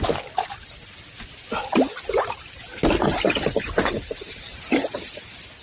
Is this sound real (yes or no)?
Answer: yes